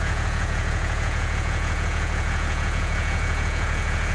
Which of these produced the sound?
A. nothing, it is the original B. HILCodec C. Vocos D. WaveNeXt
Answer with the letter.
C